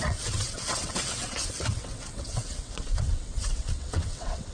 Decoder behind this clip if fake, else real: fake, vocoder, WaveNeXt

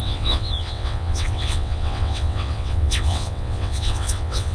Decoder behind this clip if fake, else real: fake, vocoder, WaveNeXt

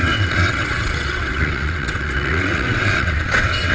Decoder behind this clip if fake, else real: fake, vocoder, WaveNeXt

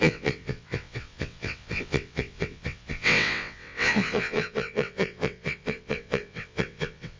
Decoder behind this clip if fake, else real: fake, vocoder, WaveNeXt